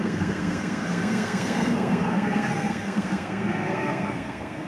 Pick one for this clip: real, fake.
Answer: fake